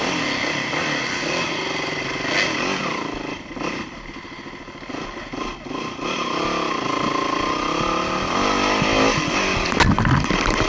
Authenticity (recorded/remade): recorded